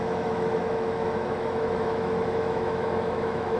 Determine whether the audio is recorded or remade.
remade